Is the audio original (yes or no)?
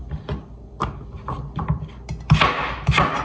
yes